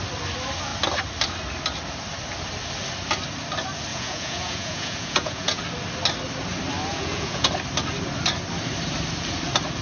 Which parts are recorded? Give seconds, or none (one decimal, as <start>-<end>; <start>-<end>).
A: 0.0-3.9; 5.6-6.9; 7.5-9.8